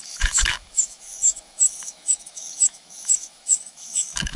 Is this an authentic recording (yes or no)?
no